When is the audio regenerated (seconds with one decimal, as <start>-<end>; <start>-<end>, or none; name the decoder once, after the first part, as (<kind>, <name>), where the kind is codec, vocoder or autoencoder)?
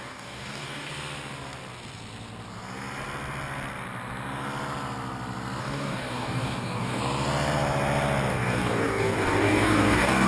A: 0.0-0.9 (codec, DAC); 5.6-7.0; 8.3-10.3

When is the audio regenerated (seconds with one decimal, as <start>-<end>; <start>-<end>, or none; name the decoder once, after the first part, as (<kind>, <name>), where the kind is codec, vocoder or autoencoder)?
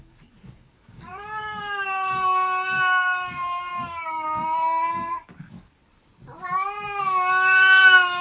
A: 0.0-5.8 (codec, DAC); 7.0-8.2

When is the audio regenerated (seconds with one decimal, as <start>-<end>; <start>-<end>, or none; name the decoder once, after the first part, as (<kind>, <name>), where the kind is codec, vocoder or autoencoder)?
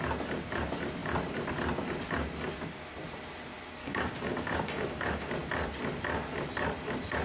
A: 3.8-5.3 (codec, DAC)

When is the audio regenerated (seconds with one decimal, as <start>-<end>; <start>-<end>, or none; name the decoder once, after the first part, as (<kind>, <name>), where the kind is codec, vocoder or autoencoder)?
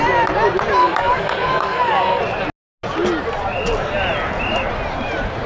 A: 0.8-2.2 (codec, DAC)